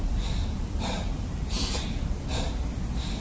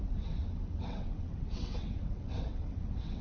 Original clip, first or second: first